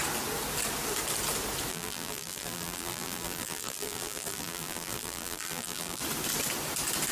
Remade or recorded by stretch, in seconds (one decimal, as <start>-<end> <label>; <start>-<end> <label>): 0.0-1.7 recorded; 1.7-6.0 remade; 6.0-7.1 recorded